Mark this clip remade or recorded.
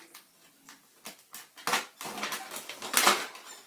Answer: recorded